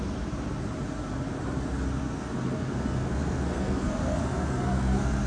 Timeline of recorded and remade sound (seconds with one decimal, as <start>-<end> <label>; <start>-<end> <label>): 0.0-2.0 recorded; 2.0-5.3 remade